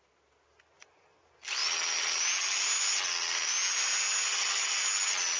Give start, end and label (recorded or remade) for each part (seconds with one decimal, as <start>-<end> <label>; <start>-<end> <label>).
0.0-5.4 recorded